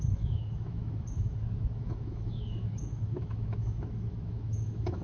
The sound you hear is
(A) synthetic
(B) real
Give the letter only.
A